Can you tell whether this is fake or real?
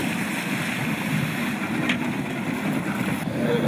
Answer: real